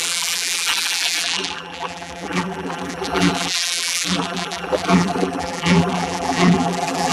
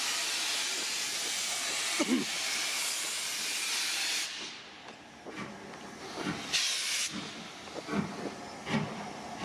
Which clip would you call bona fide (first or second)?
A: second